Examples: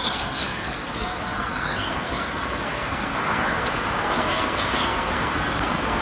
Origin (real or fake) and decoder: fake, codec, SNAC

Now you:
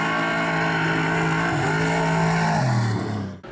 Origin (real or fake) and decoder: real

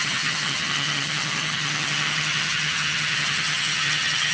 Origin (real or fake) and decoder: fake, vocoder, HiFi-GAN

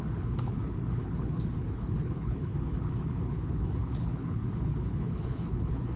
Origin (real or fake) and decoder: fake, codec, HILCodec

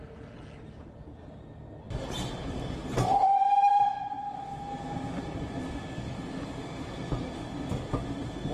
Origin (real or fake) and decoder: real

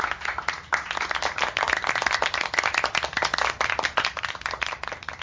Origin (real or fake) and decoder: real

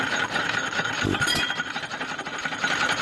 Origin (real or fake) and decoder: real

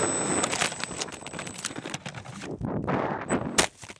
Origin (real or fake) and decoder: real